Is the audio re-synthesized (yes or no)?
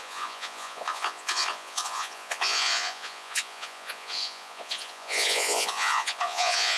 yes